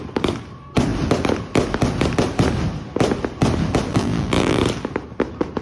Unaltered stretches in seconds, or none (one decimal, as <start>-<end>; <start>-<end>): 0.0-3.9; 4.6-5.6